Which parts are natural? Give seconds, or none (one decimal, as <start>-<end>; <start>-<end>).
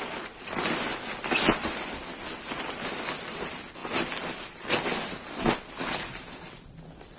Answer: 0.0-7.2